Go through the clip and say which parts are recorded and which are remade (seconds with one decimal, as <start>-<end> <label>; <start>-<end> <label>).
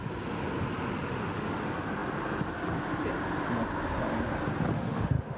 0.0-1.1 recorded; 1.1-1.6 remade; 1.6-4.7 recorded; 4.7-5.4 remade